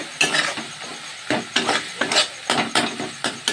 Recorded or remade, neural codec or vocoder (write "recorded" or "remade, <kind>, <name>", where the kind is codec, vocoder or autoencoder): recorded